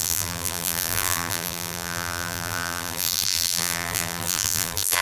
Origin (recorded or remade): remade